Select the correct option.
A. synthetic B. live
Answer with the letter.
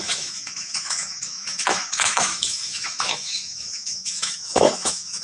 A